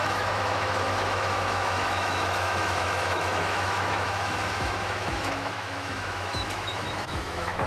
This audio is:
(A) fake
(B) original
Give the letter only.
A